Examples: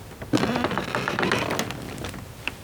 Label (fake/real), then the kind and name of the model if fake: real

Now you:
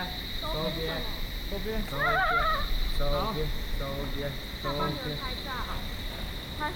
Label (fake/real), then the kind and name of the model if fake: real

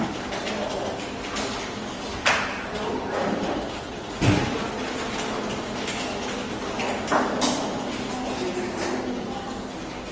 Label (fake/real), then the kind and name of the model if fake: real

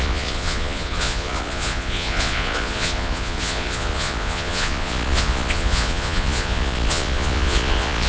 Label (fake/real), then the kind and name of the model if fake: fake, vocoder, Vocos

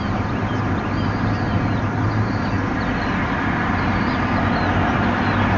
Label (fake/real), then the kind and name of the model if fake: real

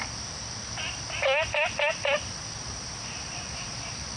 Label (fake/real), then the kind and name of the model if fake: real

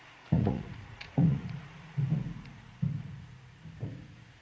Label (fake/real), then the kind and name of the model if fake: fake, vocoder, Vocos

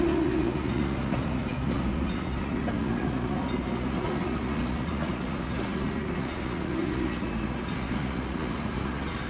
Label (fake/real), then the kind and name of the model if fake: fake, vocoder, Vocos